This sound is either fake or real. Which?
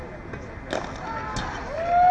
real